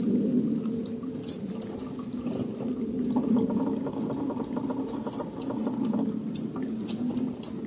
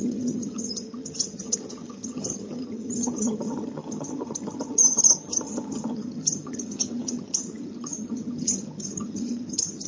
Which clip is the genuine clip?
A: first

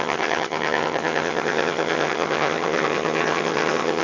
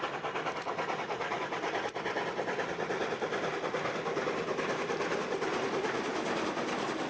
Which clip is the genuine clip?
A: second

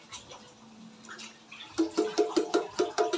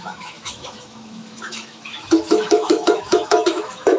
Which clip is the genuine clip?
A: first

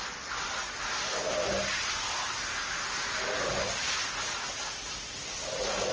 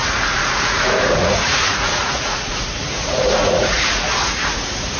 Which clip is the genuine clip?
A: first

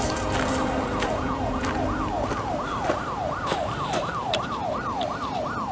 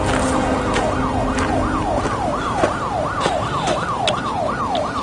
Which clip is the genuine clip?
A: second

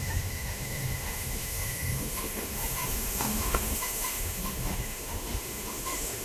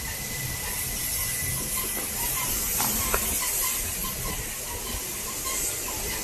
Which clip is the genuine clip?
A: second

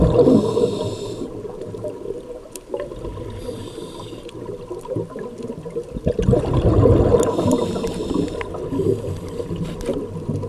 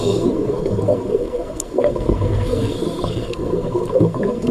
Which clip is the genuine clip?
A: first